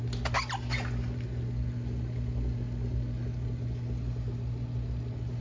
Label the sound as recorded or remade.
recorded